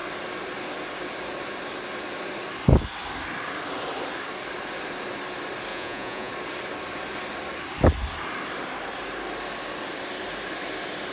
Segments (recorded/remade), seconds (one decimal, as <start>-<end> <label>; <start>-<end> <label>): 0.0-5.7 recorded; 5.7-6.3 remade; 6.3-11.1 recorded